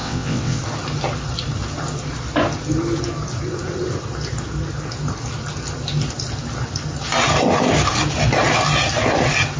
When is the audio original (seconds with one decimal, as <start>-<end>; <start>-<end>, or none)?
0.6-9.6